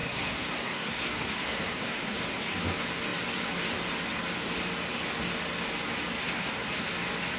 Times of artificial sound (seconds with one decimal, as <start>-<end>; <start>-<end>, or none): 0.0-2.2; 6.2-6.9